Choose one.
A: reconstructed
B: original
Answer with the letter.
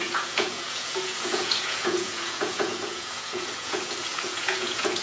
A